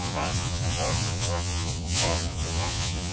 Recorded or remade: remade